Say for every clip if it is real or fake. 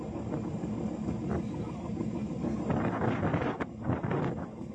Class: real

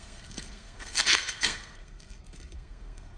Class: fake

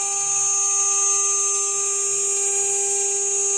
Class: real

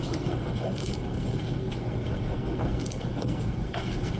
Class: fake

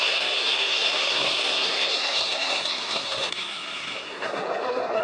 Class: fake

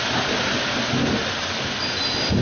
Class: real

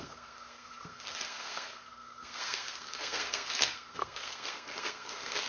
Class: fake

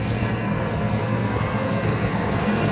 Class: fake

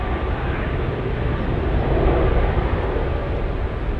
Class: real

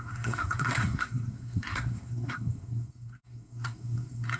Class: fake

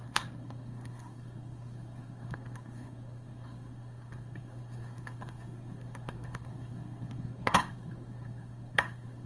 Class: fake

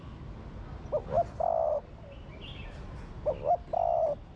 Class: real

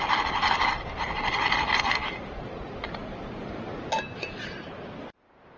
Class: real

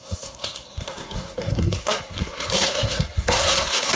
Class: fake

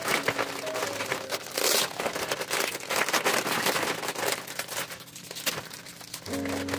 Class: real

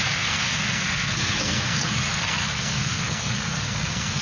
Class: fake